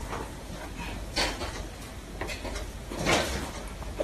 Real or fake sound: real